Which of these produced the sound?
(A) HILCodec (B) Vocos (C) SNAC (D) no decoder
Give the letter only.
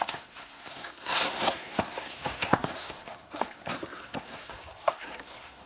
C